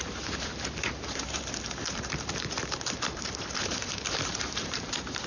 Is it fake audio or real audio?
fake